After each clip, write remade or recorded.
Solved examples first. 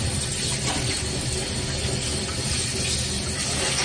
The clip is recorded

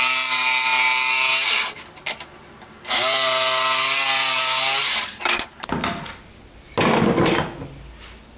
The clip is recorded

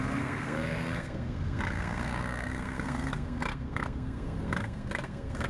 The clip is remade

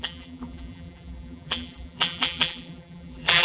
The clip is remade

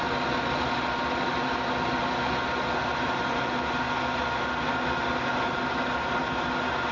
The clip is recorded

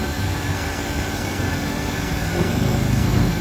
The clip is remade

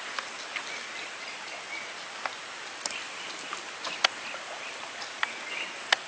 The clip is recorded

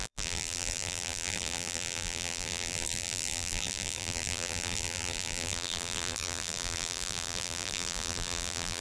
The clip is remade